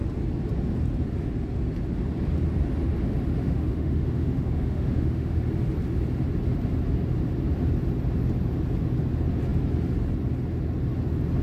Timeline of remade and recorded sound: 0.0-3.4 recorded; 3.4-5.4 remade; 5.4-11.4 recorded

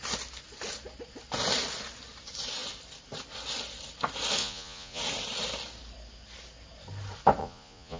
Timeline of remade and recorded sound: 0.0-4.4 recorded; 4.4-5.0 remade; 5.0-7.4 recorded; 7.4-8.0 remade

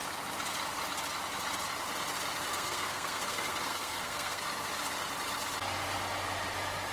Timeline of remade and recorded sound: 0.0-2.5 recorded; 2.5-4.4 remade; 4.4-6.9 recorded

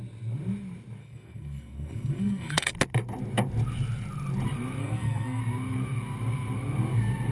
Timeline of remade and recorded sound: 0.0-1.0 recorded; 1.0-2.7 remade; 2.7-4.8 recorded; 4.8-5.4 remade; 5.4-7.3 recorded

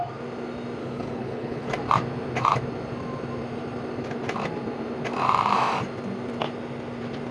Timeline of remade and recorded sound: 0.0-0.8 recorded; 0.8-1.7 remade; 1.7-7.3 recorded

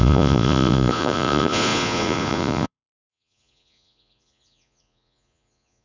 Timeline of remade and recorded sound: 0.0-5.8 remade